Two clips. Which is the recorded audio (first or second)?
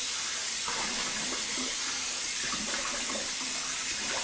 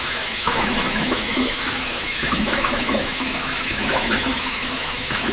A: first